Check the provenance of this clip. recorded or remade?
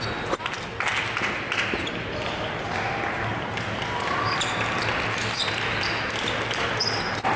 recorded